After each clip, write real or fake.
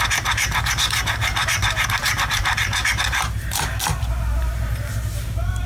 fake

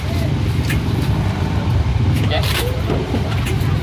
fake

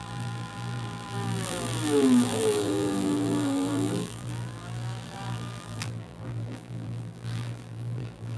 fake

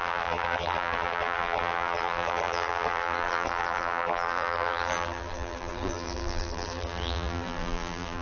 fake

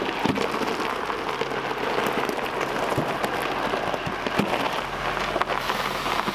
real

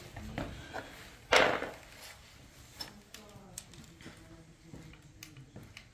real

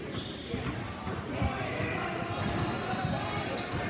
fake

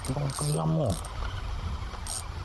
real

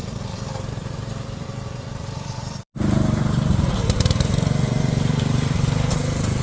fake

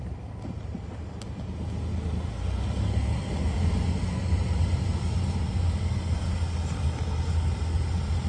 real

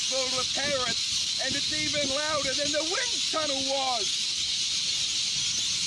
real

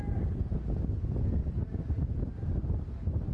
real